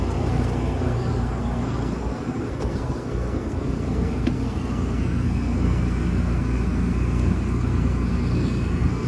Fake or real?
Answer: fake